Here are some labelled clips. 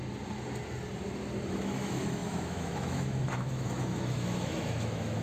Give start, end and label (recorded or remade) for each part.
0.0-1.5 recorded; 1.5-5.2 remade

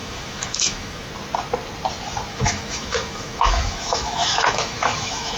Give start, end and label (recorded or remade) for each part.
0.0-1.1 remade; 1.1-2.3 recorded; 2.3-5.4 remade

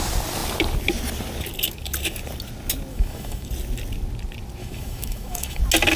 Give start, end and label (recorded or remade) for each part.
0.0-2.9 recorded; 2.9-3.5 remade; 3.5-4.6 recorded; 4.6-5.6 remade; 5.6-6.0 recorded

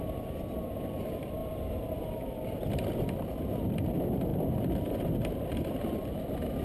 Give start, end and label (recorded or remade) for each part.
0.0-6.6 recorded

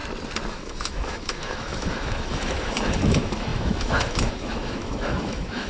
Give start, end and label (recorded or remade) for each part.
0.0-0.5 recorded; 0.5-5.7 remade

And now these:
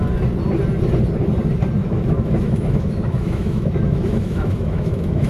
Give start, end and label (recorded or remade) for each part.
0.0-1.8 recorded; 1.8-5.3 remade

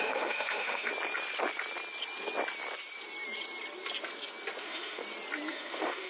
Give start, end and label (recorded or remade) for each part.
0.0-0.9 remade; 0.9-4.6 recorded; 4.6-5.0 remade; 5.0-5.5 recorded; 5.5-6.1 remade